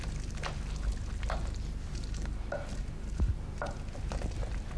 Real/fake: real